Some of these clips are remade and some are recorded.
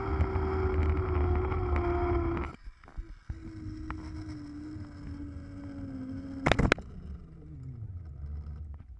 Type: recorded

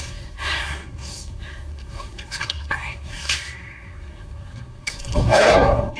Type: remade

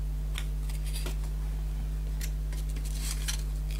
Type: recorded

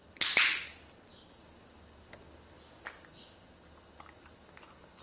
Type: recorded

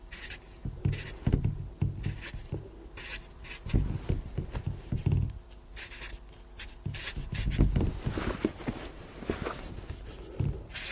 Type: recorded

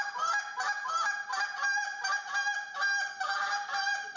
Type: recorded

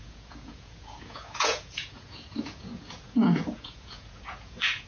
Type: remade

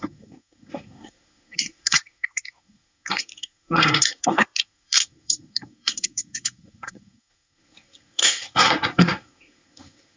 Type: remade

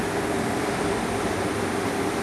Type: recorded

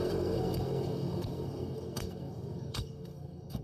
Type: remade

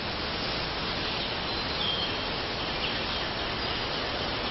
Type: recorded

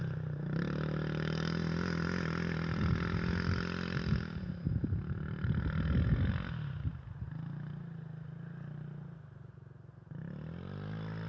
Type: recorded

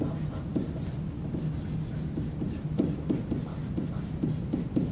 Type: recorded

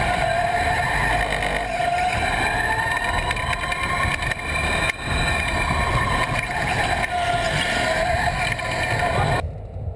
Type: recorded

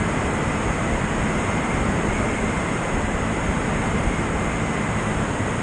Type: remade